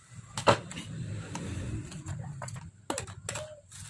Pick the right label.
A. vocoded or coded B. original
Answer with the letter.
B